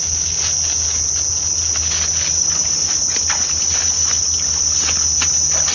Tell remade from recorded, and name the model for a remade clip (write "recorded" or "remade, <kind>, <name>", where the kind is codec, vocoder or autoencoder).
recorded